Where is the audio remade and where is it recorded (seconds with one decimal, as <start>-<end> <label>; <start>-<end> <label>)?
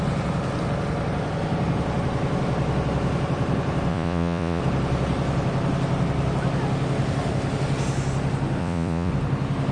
0.0-3.9 recorded; 3.9-4.6 remade; 4.6-8.6 recorded; 8.6-9.1 remade; 9.1-9.7 recorded